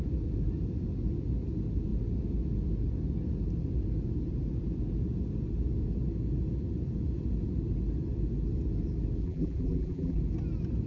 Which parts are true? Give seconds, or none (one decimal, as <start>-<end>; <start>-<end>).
0.0-9.2; 10.2-10.9